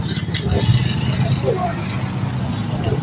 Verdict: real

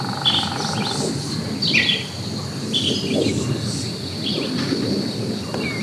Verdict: real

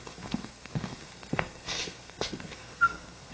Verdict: fake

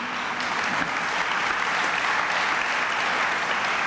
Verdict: real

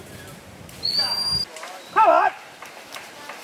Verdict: real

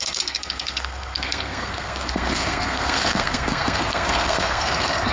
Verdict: fake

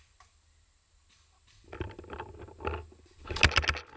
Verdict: real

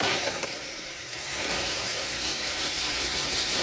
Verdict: fake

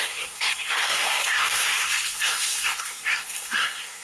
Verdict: fake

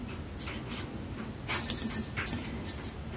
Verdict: real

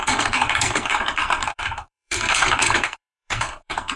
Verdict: fake